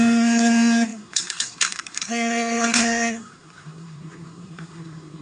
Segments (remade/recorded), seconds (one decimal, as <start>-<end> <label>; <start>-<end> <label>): 0.0-5.2 remade

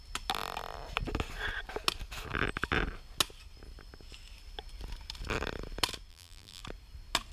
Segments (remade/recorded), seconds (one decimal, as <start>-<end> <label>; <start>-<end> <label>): 0.0-6.1 recorded; 6.1-6.6 remade; 6.6-7.3 recorded

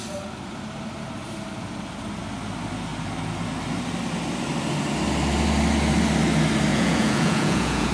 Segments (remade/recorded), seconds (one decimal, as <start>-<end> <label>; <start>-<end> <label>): 0.0-6.7 recorded; 6.7-7.9 remade